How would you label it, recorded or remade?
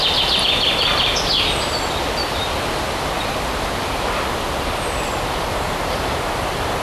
recorded